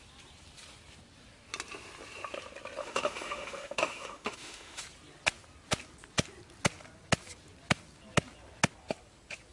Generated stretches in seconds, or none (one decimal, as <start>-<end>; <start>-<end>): 2.8-4.8